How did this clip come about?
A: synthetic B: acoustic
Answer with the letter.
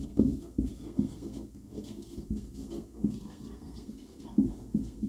A